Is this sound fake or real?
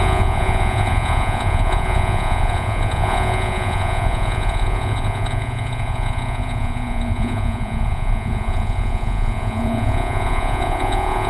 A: fake